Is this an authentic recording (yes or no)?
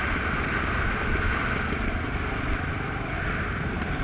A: yes